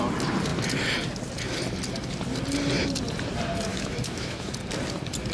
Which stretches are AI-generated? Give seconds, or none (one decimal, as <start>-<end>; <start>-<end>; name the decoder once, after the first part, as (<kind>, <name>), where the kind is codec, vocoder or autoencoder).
3.7-4.5 (autoencoder, DAC-VAE)